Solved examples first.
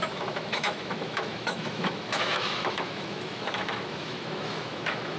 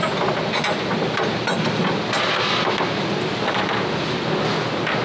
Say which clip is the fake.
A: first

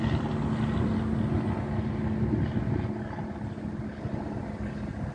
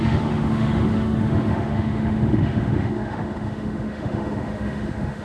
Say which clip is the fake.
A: second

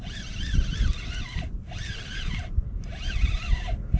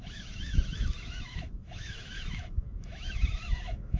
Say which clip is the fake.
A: second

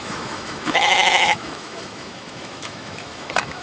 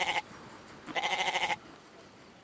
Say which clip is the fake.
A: first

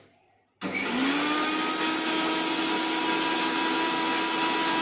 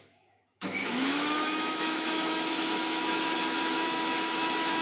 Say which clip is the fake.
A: second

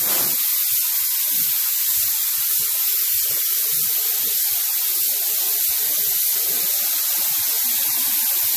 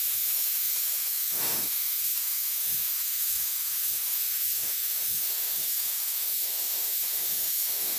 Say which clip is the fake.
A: second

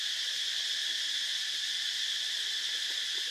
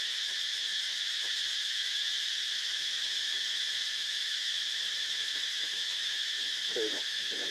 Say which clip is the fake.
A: second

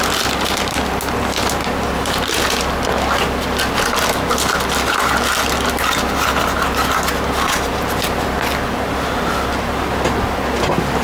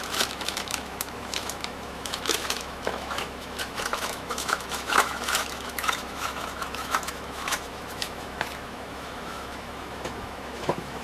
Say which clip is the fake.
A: second